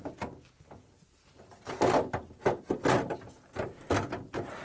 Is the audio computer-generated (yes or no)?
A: no